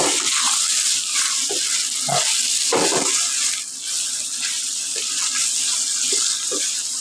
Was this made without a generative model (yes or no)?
yes